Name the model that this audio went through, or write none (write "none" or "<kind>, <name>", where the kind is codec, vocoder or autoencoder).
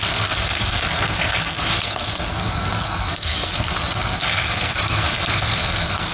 codec, SNAC